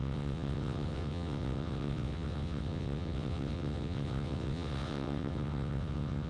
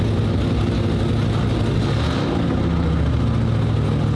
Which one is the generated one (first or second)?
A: first